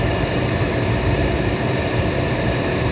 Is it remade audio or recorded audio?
remade